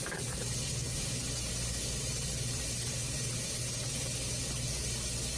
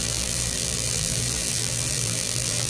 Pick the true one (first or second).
first